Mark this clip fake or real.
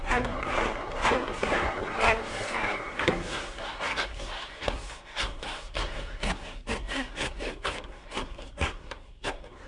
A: fake